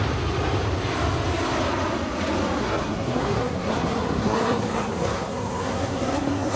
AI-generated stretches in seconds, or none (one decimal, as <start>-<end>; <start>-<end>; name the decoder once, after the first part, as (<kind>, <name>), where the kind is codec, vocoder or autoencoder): 2.6-6.6 (codec, SNAC)